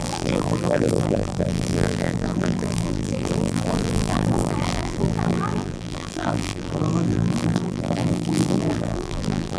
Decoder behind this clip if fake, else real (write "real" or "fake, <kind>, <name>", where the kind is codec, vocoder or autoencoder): fake, vocoder, BigVGAN v2